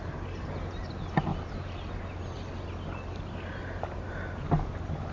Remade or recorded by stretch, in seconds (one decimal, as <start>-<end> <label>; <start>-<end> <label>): 0.0-5.1 recorded